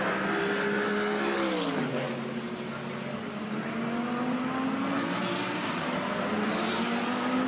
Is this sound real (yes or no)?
yes